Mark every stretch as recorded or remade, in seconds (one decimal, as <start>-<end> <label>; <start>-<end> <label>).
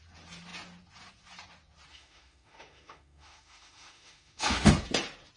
0.0-1.9 recorded; 1.9-4.7 remade; 4.7-5.4 recorded